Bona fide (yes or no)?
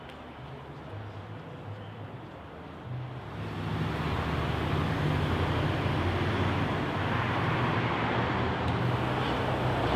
yes